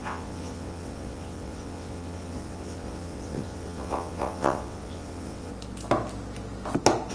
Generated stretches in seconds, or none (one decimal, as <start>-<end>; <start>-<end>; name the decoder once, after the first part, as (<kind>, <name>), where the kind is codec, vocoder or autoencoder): 0.0-5.5 (vocoder, WaveNeXt)